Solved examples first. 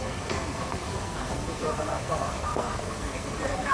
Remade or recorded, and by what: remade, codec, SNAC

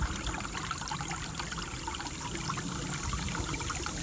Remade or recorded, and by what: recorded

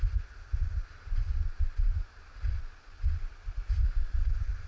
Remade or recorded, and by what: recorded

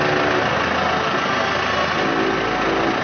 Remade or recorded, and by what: recorded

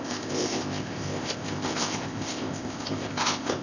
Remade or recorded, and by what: remade, codec, ZipCodec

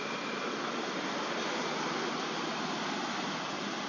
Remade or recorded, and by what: recorded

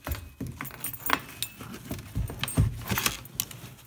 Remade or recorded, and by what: recorded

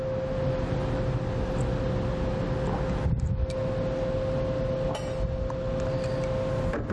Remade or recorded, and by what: recorded